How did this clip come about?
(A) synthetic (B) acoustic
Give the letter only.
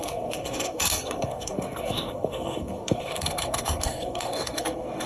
A